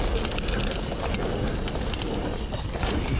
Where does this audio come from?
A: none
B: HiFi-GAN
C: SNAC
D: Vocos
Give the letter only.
A